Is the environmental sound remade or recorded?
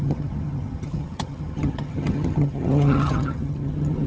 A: remade